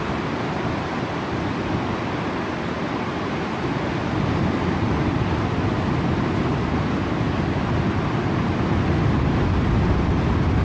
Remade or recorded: recorded